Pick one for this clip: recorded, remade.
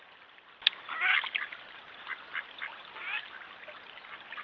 recorded